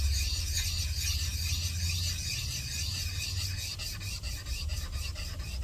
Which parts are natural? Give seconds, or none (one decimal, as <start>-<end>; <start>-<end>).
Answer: 0.0-5.6